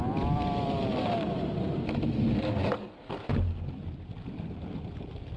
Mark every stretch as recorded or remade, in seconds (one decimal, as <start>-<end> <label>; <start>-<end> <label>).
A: 0.0-0.9 remade; 0.9-2.9 recorded; 2.9-3.3 remade; 3.3-4.5 recorded; 4.5-5.4 remade